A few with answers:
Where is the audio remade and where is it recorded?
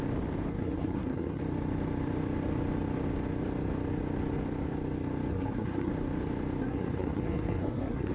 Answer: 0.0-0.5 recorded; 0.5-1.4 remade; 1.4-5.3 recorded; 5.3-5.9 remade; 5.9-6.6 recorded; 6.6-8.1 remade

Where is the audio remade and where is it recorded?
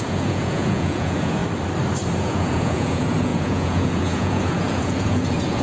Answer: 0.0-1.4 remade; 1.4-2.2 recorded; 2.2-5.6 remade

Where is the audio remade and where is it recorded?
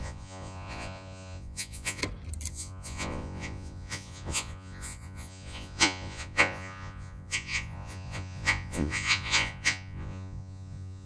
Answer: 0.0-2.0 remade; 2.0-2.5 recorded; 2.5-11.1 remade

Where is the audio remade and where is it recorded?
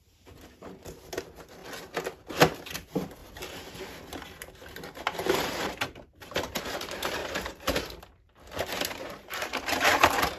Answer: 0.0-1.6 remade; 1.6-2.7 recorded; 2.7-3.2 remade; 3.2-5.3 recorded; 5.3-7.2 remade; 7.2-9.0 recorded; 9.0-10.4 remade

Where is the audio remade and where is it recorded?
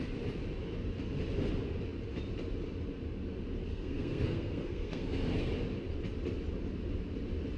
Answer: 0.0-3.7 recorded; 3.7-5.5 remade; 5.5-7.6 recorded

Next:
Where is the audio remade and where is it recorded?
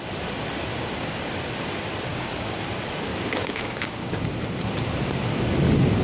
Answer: 0.0-0.7 recorded; 0.7-1.3 remade; 1.3-2.1 recorded; 2.1-2.6 remade; 2.6-3.1 recorded; 3.1-4.3 remade; 4.3-6.0 recorded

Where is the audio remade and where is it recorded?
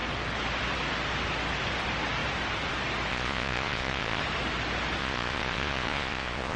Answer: 0.0-3.1 recorded; 3.1-4.2 remade; 4.2-5.0 recorded; 5.0-6.6 remade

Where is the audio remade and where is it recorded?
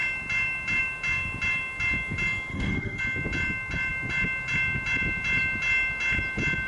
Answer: 0.0-2.5 recorded; 2.5-3.0 remade; 3.0-6.7 recorded